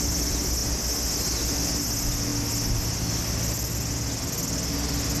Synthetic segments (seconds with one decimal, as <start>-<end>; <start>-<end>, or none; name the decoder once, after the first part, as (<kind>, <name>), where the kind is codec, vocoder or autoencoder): none